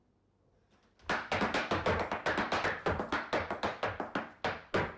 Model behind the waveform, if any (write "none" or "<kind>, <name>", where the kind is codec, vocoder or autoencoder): none